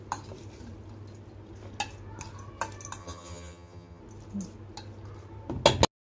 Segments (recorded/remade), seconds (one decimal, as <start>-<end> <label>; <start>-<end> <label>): 0.0-3.0 recorded; 3.0-4.0 remade; 4.0-6.1 recorded